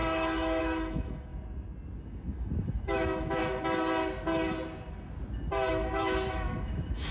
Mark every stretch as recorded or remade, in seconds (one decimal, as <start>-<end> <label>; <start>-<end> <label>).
0.0-1.3 remade; 1.3-2.0 recorded; 2.0-3.4 remade; 3.4-5.7 recorded; 5.7-7.1 remade